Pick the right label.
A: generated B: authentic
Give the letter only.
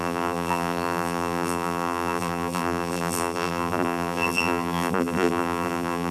A